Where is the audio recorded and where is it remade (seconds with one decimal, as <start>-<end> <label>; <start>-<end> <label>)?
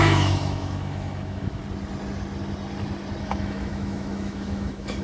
0.0-1.6 remade; 1.6-3.2 recorded; 3.2-5.0 remade